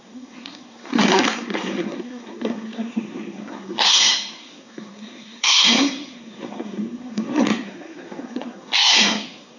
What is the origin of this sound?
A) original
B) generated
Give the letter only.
B